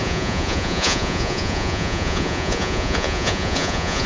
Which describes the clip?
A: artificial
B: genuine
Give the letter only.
A